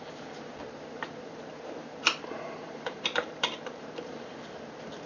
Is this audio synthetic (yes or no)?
yes